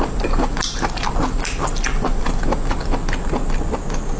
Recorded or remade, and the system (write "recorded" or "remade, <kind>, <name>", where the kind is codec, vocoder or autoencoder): recorded